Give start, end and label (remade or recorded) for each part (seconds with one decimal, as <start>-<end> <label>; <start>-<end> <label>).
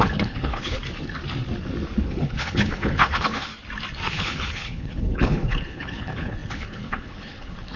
0.0-0.8 remade; 0.8-2.0 recorded; 2.0-3.5 remade; 3.5-4.1 recorded; 4.1-7.8 remade